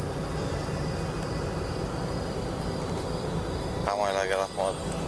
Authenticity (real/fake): real